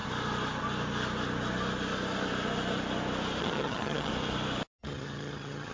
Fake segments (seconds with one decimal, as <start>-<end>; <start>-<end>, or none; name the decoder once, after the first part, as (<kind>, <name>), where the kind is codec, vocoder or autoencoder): 3.4-4.1 (vocoder, HiFi-GAN); 4.8-5.7